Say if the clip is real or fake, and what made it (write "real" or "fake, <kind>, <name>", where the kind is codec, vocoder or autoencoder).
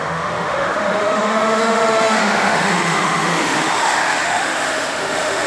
fake, autoencoder, DAC-VAE